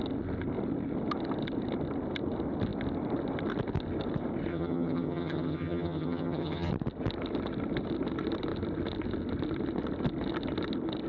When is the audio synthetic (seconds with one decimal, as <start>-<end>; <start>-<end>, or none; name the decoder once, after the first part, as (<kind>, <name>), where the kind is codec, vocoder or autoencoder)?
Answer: 4.5-6.7 (vocoder, HiFi-GAN)